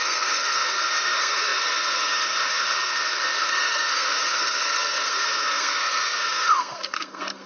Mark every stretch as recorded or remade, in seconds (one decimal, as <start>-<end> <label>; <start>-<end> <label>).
0.0-7.5 remade